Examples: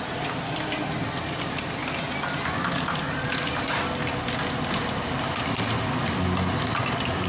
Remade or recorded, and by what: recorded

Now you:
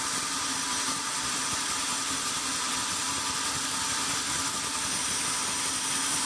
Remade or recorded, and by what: recorded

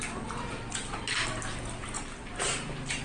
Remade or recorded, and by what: recorded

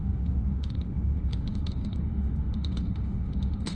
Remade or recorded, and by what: remade, autoencoder, DAC-VAE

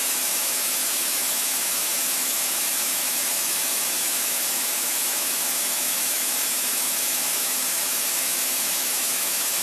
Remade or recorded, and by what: remade, autoencoder, DAC-VAE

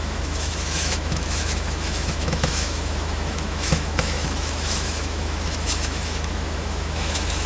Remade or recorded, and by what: remade, autoencoder, DAC-VAE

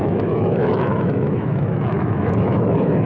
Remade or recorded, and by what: remade, autoencoder, DAC-VAE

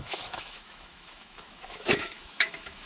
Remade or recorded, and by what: remade, autoencoder, DAC-VAE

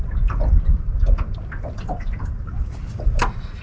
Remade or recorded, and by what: recorded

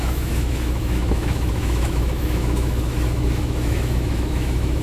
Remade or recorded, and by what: remade, autoencoder, DAC-VAE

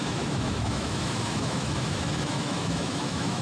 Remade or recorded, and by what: remade, autoencoder, DAC-VAE